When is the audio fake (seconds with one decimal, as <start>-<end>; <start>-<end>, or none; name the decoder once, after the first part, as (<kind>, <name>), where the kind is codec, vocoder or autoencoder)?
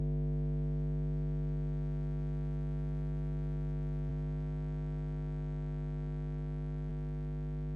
none